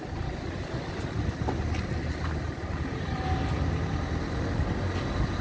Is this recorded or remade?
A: recorded